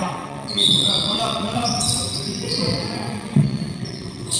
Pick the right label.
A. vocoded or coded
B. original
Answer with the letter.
A